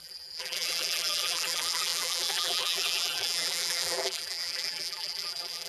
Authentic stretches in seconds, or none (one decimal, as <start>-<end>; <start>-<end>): none